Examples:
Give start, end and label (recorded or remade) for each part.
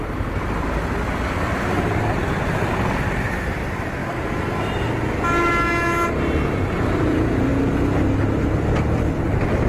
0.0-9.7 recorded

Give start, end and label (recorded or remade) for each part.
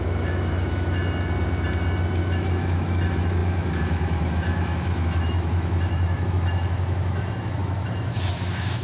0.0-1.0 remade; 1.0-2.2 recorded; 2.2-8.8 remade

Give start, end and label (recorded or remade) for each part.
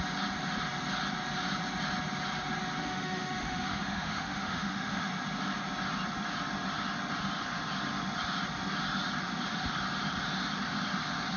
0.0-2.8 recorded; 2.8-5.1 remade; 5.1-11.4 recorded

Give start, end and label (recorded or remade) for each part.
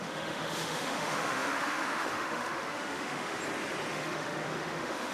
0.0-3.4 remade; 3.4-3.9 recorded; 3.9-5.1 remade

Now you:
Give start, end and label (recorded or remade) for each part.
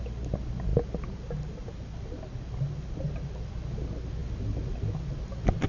0.0-5.7 recorded